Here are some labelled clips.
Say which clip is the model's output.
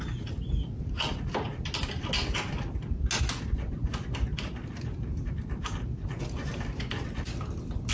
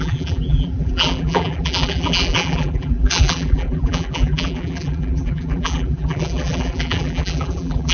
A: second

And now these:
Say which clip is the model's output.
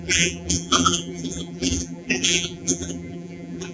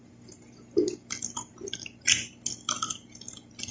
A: first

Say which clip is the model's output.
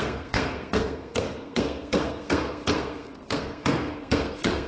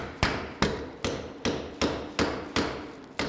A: first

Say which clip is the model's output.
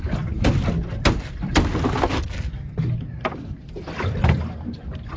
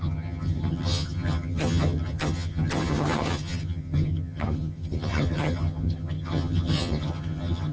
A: second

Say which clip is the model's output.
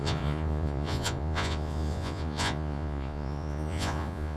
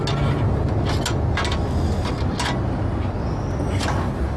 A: first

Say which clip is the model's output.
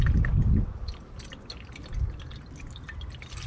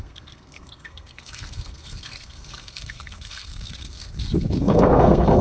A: second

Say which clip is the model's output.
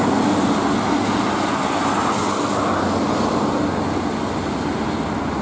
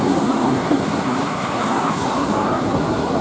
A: second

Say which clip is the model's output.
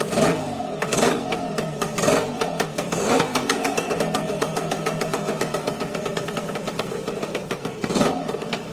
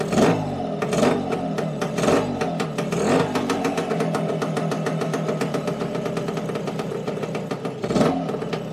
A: first